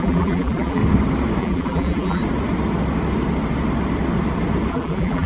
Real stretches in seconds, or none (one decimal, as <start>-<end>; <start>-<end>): 0.8-1.4; 2.2-4.7